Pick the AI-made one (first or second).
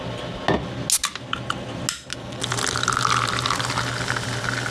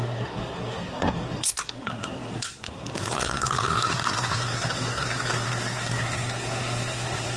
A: second